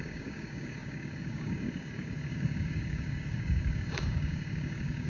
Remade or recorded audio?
remade